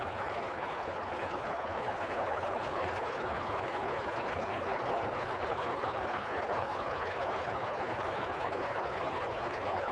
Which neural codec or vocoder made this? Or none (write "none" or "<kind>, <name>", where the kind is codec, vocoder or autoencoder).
codec, HILCodec